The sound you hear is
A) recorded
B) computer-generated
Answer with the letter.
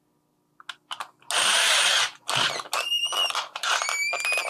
A